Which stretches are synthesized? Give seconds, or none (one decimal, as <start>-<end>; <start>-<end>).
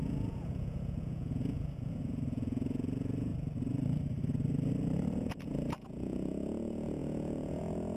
0.0-3.3; 5.3-8.0